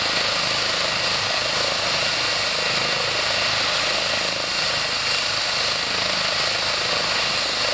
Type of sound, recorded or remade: recorded